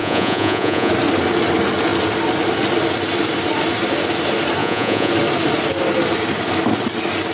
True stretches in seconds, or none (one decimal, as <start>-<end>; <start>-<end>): 0.9-4.6; 5.1-7.3